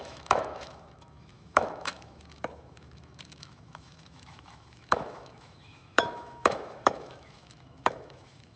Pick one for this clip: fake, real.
fake